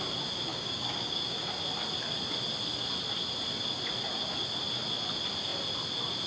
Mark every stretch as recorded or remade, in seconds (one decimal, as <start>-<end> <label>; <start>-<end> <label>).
0.0-0.5 recorded; 0.5-1.5 remade; 1.5-6.3 recorded